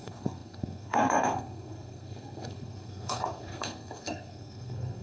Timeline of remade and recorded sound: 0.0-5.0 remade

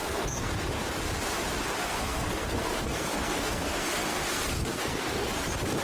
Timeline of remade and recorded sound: 0.0-0.5 remade; 0.5-1.8 recorded; 1.8-5.3 remade; 5.3-5.8 recorded

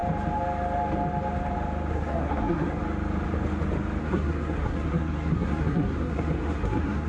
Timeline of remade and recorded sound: 0.0-1.9 recorded; 1.9-2.8 remade; 2.8-4.0 recorded; 4.0-7.1 remade

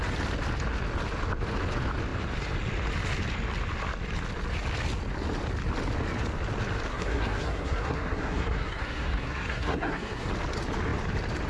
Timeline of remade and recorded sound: 0.0-6.9 recorded; 6.9-10.3 remade; 10.3-11.5 recorded

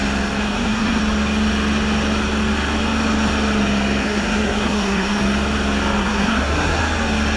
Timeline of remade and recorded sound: 0.0-0.4 recorded; 0.4-1.0 remade; 1.0-4.0 recorded; 4.0-5.2 remade; 5.2-6.0 recorded; 6.0-6.8 remade; 6.8-7.4 recorded

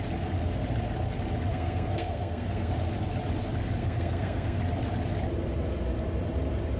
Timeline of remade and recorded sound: 0.0-1.5 recorded; 1.5-2.7 remade; 2.7-3.8 recorded; 3.8-4.6 remade; 4.6-6.8 recorded

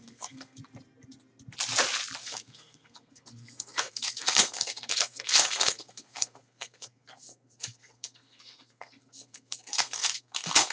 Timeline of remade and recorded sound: 0.0-0.6 remade; 0.6-2.2 recorded; 2.2-10.7 remade

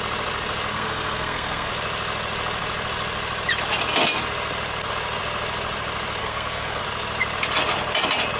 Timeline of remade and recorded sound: 0.0-0.7 recorded; 0.7-1.7 remade; 1.7-6.2 recorded; 6.2-6.8 remade; 6.8-8.4 recorded